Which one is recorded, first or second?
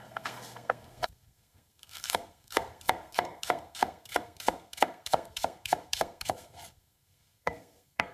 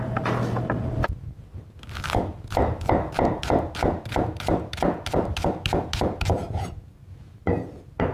second